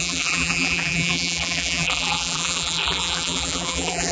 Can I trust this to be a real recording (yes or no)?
no